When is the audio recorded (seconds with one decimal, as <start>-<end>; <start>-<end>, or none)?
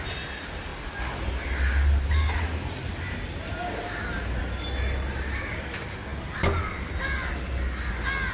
0.0-8.3